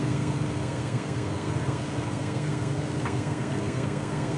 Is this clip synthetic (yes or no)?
yes